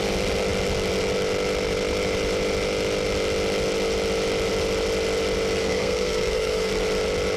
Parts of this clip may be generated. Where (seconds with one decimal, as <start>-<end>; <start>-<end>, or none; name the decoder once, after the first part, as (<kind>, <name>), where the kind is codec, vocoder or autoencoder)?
5.6-6.7 (codec, SNAC)